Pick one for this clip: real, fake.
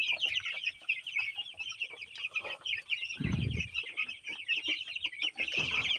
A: real